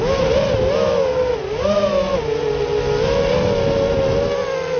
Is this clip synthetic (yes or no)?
no